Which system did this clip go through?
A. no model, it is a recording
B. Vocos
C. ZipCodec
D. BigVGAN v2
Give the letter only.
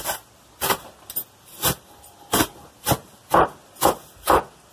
A